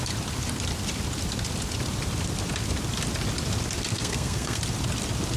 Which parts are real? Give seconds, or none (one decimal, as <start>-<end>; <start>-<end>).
0.0-3.9; 4.6-5.4